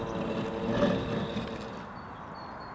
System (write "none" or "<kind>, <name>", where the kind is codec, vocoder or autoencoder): none